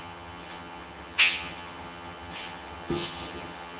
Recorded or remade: remade